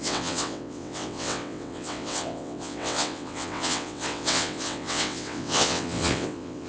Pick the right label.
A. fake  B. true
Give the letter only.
A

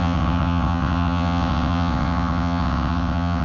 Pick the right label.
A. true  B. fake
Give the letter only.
B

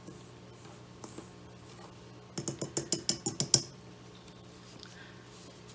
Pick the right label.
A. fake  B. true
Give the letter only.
B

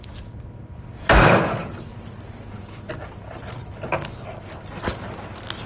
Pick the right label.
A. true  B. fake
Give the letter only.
A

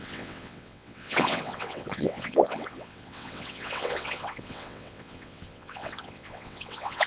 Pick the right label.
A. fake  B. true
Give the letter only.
A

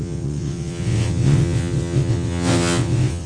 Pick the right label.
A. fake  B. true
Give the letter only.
A